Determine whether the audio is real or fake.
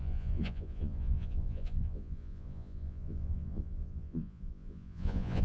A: fake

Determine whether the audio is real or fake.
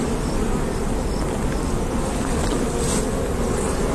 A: real